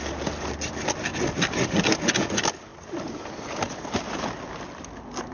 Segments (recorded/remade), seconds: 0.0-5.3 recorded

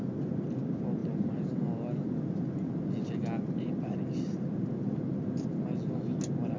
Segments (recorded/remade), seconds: 0.0-6.6 recorded

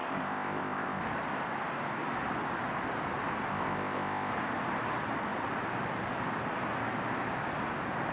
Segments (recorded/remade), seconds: 0.0-1.0 remade; 1.0-3.5 recorded; 3.5-4.3 remade; 4.3-8.1 recorded